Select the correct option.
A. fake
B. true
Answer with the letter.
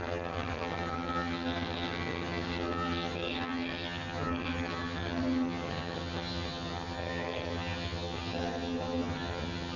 A